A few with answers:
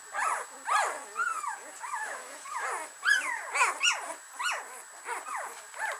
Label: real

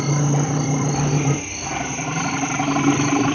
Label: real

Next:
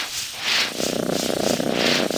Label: real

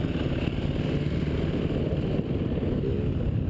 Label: real